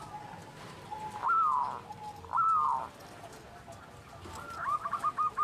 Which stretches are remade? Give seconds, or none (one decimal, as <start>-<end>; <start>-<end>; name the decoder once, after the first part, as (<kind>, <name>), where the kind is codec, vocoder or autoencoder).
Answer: none